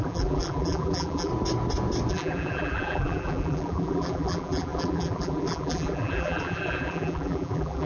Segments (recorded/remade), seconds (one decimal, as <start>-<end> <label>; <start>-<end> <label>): 0.0-1.3 remade; 1.3-2.1 recorded; 2.1-7.9 remade